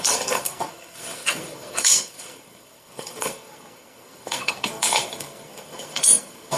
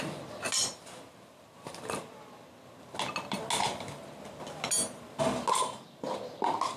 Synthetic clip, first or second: first